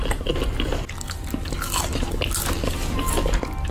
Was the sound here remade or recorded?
recorded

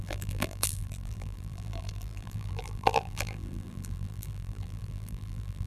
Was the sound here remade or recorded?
remade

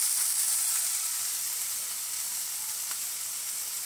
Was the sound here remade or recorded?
remade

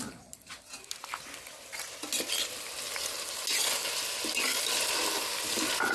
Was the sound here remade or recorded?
recorded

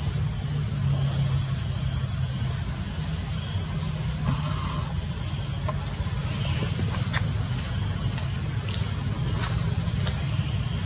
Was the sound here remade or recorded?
recorded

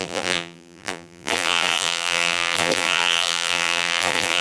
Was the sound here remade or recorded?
remade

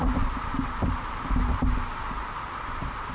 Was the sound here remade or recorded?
recorded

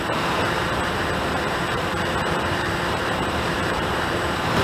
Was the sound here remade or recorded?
remade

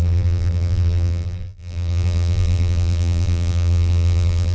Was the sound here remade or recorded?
remade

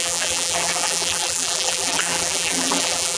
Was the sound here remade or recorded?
remade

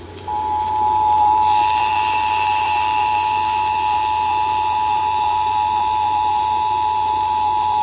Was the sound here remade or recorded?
remade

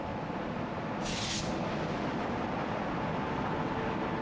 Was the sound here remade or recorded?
recorded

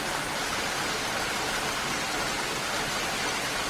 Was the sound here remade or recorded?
recorded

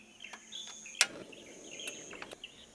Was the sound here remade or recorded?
recorded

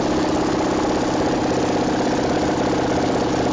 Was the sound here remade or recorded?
recorded